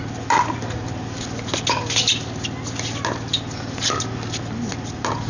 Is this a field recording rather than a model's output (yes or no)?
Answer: yes